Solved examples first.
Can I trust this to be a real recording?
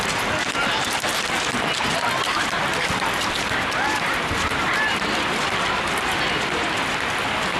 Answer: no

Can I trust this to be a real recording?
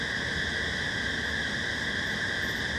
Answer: yes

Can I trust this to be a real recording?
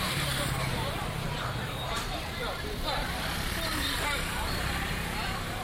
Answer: no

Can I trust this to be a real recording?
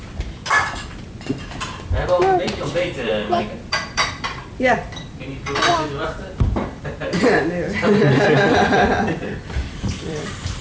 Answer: no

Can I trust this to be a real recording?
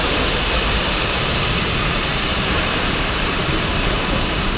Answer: no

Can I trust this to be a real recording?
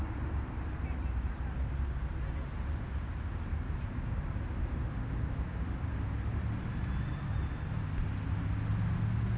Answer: yes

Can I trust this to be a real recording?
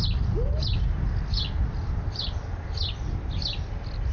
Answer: yes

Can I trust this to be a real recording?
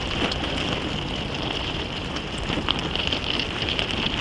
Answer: no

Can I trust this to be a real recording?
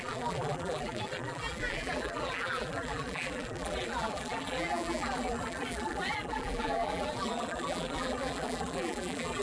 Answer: no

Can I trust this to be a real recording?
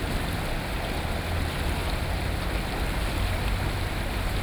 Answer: yes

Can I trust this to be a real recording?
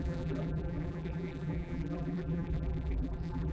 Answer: no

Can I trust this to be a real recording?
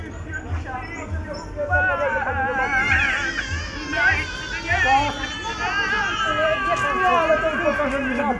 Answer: yes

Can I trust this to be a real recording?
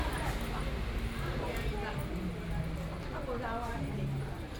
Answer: yes